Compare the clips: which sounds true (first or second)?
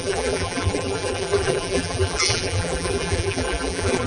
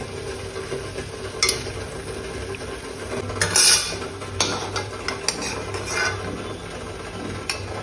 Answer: second